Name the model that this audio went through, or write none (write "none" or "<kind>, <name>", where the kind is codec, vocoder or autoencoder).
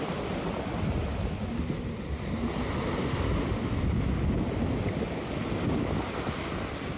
none